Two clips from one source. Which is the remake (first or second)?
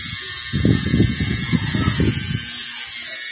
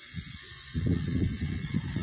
second